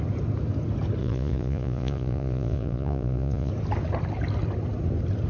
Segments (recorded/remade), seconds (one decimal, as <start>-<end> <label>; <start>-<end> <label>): 0.0-1.0 recorded; 1.0-3.5 remade; 3.5-5.3 recorded